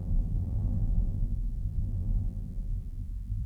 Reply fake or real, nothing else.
fake